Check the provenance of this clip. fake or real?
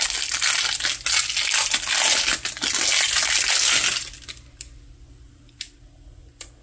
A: real